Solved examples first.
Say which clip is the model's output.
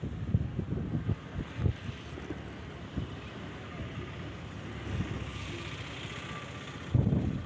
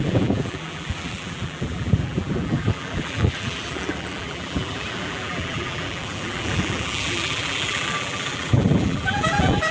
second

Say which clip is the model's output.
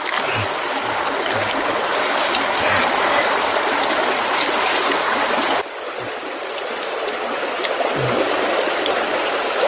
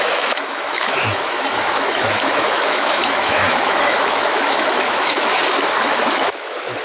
second